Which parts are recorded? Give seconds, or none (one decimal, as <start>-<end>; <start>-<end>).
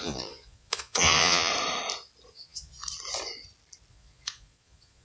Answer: 1.5-2.3; 2.8-3.9